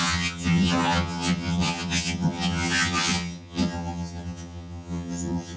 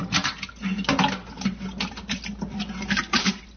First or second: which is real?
second